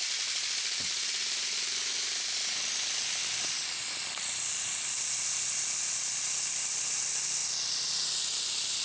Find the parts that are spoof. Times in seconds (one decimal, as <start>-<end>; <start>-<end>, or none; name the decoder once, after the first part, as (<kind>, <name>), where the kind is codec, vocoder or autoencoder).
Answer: none